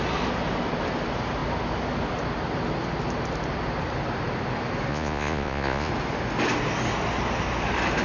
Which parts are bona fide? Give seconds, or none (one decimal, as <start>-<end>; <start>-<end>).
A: 0.0-4.9; 5.9-8.0